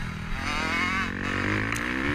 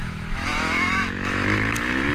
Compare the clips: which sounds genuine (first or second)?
first